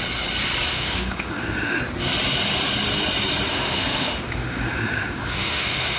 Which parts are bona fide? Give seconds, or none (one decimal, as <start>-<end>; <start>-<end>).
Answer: 0.0-0.7; 1.8-3.5